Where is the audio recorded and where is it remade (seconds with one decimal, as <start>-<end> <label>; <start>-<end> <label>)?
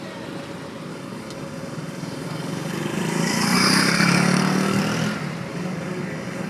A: 0.0-0.9 recorded; 0.9-4.8 remade; 4.8-5.5 recorded; 5.5-6.5 remade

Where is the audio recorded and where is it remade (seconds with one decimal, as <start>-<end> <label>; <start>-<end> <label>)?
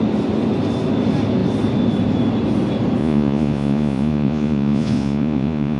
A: 0.0-3.0 recorded; 3.0-5.8 remade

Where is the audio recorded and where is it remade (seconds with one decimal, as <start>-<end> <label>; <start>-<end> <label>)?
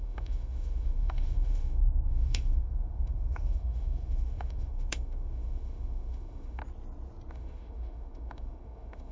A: 0.0-6.6 remade; 6.6-7.3 recorded; 7.3-9.1 remade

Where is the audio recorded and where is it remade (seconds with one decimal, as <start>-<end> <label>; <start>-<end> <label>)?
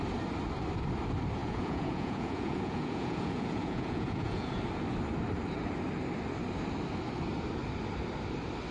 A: 0.0-1.4 recorded; 1.4-4.6 remade; 4.6-8.7 recorded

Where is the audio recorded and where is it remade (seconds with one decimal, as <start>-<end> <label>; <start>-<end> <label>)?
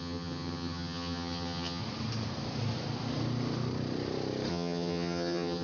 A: 0.0-1.8 remade; 1.8-4.5 recorded; 4.5-5.6 remade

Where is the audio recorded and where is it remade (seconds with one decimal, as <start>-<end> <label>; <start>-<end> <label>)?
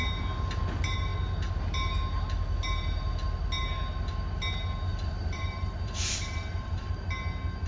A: 0.0-4.9 recorded; 4.9-6.9 remade; 6.9-7.7 recorded